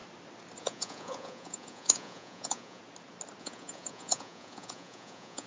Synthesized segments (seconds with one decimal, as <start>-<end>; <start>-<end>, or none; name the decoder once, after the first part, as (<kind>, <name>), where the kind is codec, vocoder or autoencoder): 0.6-2.8 (vocoder, Vocos); 3.4-5.5